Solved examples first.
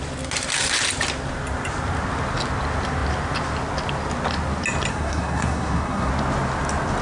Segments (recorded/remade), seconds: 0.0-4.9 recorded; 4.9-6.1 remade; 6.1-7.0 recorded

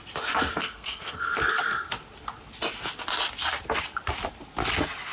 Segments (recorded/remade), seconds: 0.0-0.6 recorded; 0.6-1.9 remade; 1.9-5.1 recorded

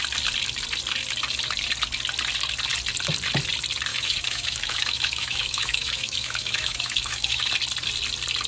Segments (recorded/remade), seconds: 0.0-3.9 recorded; 3.9-7.5 remade; 7.5-8.5 recorded

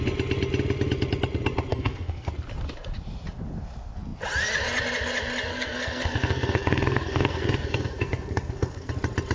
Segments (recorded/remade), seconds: 0.0-1.7 recorded; 1.7-2.3 remade; 2.3-5.5 recorded; 5.5-8.9 remade; 8.9-9.3 recorded

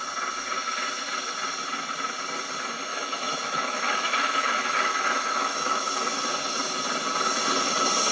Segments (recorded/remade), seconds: 0.0-2.9 recorded; 2.9-6.2 remade; 6.2-8.1 recorded

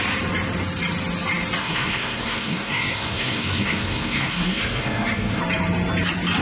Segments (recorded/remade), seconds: 0.0-1.6 recorded; 1.6-5.4 remade; 5.4-6.4 recorded